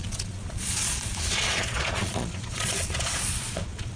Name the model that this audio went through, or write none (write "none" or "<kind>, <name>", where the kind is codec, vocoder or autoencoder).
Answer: vocoder, Vocos